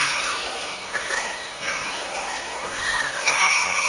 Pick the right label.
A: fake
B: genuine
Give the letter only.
A